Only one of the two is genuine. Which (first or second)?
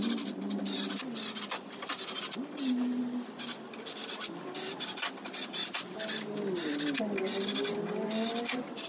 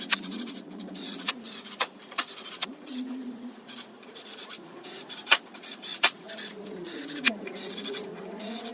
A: first